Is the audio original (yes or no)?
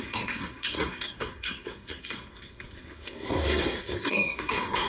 no